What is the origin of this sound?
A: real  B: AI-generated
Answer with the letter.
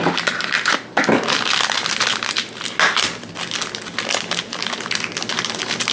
A